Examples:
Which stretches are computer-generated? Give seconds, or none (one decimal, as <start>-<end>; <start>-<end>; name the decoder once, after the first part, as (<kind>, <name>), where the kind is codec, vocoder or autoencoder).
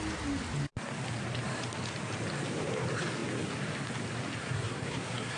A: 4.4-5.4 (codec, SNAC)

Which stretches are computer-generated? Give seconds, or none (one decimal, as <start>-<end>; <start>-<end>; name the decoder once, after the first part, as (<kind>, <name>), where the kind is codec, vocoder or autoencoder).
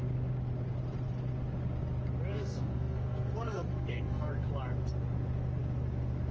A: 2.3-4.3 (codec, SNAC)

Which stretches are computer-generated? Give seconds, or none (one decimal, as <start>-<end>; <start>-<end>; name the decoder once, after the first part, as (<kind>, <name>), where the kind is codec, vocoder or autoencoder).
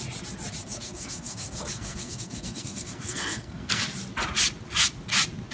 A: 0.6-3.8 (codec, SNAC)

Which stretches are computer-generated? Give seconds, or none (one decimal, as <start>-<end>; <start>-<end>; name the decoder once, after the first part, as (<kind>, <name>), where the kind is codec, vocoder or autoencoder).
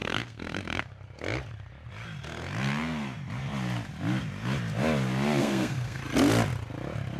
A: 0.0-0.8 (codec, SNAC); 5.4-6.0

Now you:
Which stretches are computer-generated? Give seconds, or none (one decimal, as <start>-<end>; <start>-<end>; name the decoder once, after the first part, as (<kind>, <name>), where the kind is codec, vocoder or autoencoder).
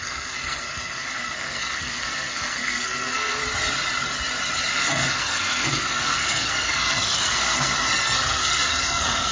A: 0.0-3.4 (codec, SNAC); 4.7-9.3